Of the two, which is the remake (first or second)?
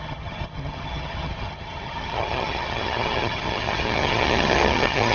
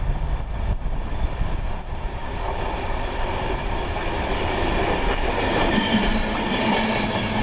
first